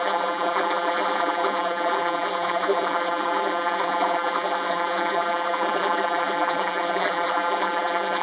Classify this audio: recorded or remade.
remade